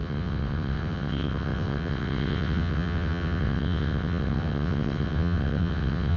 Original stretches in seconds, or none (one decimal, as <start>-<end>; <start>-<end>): none